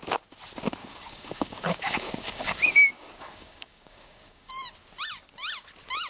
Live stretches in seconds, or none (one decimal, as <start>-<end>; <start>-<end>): 0.0-0.8; 4.5-6.1